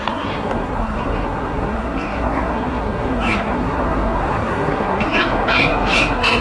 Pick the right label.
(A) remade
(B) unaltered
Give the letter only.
A